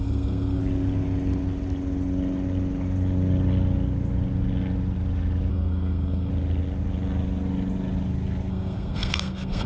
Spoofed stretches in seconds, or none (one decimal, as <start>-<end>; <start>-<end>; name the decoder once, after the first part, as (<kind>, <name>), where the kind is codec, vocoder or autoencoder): 0.0-0.6 (codec, SNAC); 5.5-6.3; 8.5-9.7

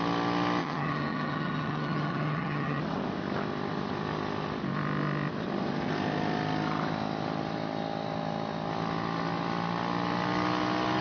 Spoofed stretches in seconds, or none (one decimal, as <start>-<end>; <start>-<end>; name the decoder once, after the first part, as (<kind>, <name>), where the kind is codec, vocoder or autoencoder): 0.6-2.8 (vocoder, HiFi-GAN)

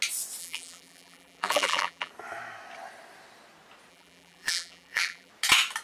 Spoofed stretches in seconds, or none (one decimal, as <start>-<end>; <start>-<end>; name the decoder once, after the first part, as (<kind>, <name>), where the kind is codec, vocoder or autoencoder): 0.4-2.1 (vocoder, BigVGAN v2); 3.9-5.3

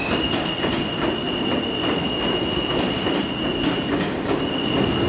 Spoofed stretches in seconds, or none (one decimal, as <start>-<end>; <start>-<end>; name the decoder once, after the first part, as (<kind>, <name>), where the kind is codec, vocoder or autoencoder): 2.0-2.8 (autoencoder, DAC-VAE)

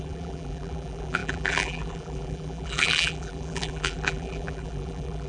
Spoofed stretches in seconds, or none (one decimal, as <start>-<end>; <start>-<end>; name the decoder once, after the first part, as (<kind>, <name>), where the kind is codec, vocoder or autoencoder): 0.0-5.3 (vocoder, BigVGAN v2)

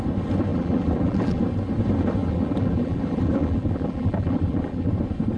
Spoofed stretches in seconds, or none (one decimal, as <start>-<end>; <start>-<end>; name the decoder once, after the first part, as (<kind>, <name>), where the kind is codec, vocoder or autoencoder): 0.5-1.4 (vocoder, BigVGAN v2); 2.2-4.9

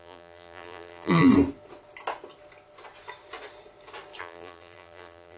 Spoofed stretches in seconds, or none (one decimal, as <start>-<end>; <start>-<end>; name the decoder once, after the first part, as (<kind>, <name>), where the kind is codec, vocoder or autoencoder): 0.0-1.3 (vocoder, BigVGAN v2); 4.2-5.4